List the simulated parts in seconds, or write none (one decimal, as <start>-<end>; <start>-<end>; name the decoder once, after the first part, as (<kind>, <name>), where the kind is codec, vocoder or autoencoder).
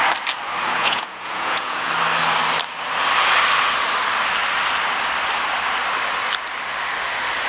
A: 0.7-1.9 (vocoder, Vocos)